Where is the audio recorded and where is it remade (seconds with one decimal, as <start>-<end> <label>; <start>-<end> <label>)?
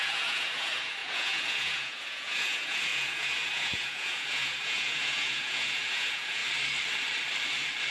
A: 0.0-6.4 remade; 6.4-7.9 recorded